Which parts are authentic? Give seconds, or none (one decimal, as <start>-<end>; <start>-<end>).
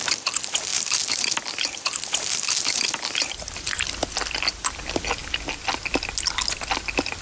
0.0-0.7; 3.9-7.2